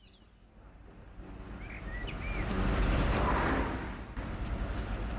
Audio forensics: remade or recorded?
recorded